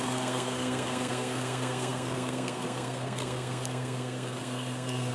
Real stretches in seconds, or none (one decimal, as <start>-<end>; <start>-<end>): none